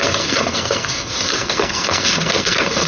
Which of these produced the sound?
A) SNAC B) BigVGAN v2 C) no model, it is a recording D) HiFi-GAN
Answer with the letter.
A